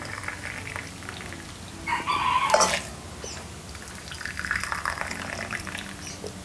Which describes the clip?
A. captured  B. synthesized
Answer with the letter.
A